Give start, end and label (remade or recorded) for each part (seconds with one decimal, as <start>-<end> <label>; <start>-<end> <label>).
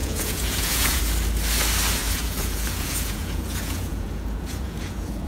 0.0-1.0 remade; 1.0-2.0 recorded; 2.0-5.3 remade